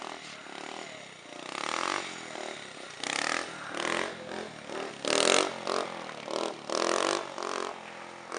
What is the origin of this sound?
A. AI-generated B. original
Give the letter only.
B